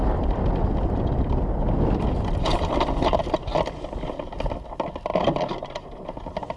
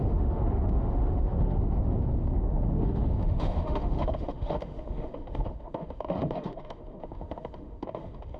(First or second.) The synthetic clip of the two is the second